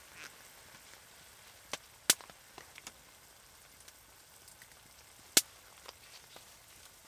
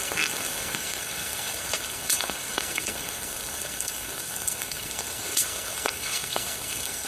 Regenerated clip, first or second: second